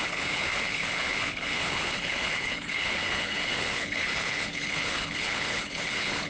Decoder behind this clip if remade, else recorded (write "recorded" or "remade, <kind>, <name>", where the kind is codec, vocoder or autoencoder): remade, codec, HILCodec